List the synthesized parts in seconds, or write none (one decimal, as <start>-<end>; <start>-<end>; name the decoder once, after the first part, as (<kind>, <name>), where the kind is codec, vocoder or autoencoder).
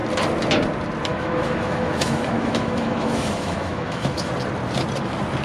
1.1-4.3 (autoencoder, DAC-VAE)